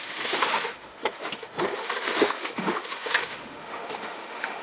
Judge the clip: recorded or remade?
remade